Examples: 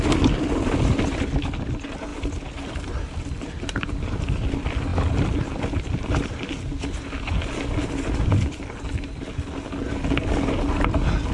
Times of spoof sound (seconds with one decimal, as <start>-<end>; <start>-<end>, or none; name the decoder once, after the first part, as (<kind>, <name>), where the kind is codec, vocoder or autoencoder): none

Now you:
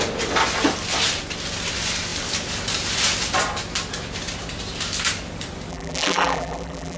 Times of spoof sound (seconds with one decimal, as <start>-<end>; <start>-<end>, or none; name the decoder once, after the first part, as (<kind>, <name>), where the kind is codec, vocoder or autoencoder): 5.7-7.0 (vocoder, BigVGAN v2)

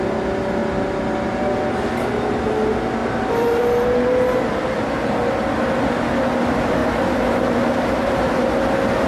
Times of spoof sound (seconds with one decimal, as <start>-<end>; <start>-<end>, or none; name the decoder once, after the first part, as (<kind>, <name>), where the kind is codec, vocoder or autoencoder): 3.0-3.6 (vocoder, BigVGAN v2); 6.8-8.4

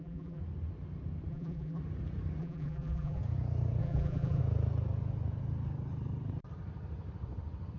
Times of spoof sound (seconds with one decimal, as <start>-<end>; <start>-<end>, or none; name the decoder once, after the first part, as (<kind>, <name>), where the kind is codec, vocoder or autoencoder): 0.0-0.4 (vocoder, BigVGAN v2); 1.3-1.8; 2.4-3.2; 3.8-4.4

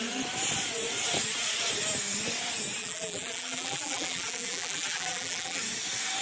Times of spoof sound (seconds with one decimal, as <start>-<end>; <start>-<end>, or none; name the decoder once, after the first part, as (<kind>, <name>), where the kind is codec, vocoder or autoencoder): 2.8-5.6 (vocoder, BigVGAN v2)

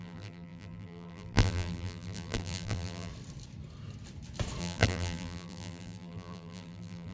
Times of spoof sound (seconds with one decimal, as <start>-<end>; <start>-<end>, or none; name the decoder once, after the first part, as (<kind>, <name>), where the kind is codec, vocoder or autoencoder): 0.0-3.1 (vocoder, BigVGAN v2); 4.6-7.1